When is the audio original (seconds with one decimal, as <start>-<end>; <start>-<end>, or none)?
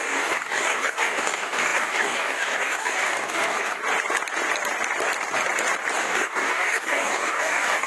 3.8-6.0